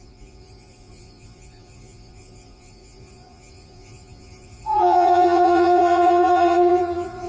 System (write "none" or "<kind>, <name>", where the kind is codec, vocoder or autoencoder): vocoder, Vocos